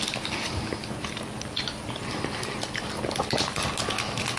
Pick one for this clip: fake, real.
real